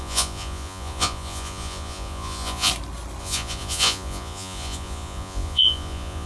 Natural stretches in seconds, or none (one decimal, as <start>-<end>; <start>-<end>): 2.7-3.2